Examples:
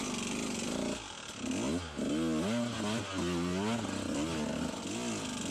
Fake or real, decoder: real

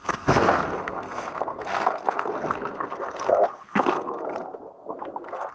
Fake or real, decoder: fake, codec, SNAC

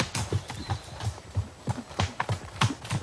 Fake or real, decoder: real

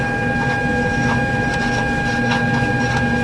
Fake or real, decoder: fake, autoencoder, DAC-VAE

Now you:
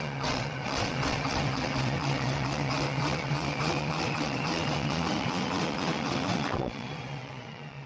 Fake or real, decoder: fake, vocoder, WaveNeXt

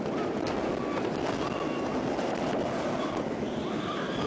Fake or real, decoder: real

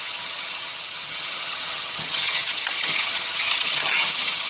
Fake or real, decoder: fake, vocoder, HiFi-GAN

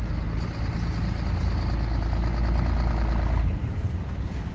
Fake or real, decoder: real